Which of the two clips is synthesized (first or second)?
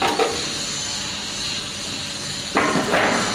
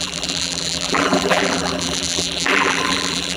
second